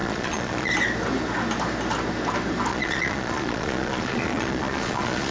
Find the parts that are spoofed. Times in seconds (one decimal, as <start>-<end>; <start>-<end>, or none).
0.0-0.7; 2.7-5.3